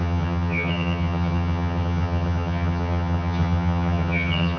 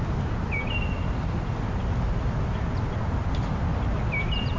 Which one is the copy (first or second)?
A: first